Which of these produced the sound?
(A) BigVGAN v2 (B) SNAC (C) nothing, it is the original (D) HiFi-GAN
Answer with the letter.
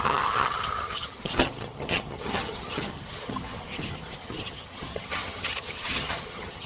D